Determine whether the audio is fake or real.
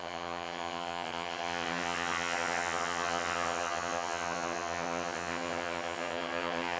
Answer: fake